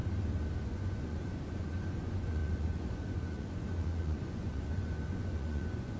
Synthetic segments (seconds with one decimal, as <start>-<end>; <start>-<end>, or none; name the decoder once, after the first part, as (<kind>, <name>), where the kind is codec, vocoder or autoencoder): 0.6-6.0 (vocoder, Vocos)